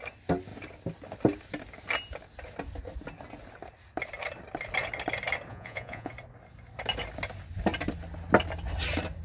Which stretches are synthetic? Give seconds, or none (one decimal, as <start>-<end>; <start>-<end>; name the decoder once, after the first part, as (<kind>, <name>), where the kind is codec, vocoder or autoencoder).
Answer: 5.5-6.1 (vocoder, Vocos)